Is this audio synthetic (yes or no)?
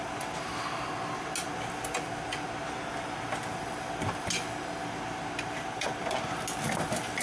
no